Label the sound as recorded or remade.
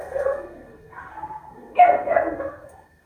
remade